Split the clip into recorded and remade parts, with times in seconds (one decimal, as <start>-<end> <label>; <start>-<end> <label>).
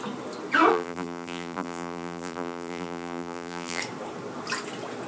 0.0-0.7 recorded; 0.7-3.8 remade; 3.8-5.1 recorded